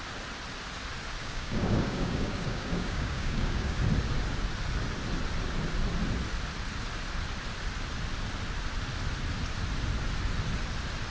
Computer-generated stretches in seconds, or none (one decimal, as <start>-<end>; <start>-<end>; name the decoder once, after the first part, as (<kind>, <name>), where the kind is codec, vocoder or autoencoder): 1.2-3.8 (codec, DAC)